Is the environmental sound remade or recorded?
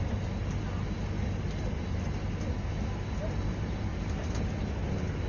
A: recorded